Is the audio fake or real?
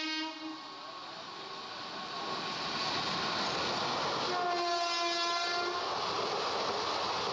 real